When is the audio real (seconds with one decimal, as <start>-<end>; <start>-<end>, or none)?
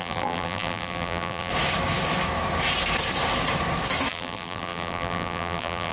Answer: 1.5-4.1